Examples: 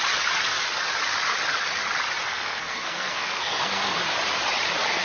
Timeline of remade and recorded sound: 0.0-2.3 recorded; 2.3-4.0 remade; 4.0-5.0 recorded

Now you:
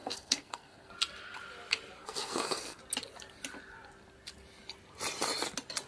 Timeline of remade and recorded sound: 0.0-0.9 remade; 0.9-2.0 recorded; 2.0-2.8 remade; 2.8-5.9 recorded

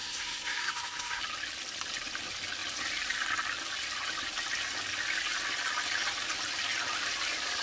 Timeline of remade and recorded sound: 0.0-1.2 remade; 1.2-7.6 recorded

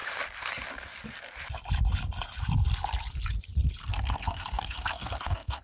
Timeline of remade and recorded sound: 0.0-3.8 recorded; 3.8-5.6 remade

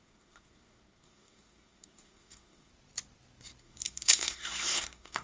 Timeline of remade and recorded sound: 0.0-2.7 remade; 2.7-3.6 recorded; 3.6-5.2 remade

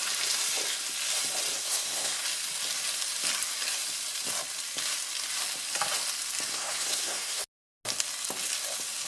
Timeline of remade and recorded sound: 0.0-1.5 recorded; 1.5-2.2 remade; 2.2-6.5 recorded; 6.5-7.4 remade; 7.4-9.1 recorded

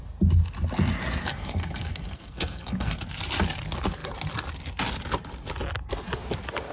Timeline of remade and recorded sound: 0.0-1.3 recorded; 1.3-3.0 remade; 3.0-6.7 recorded

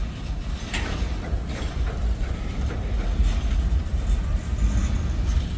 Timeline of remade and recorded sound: 0.0-5.6 recorded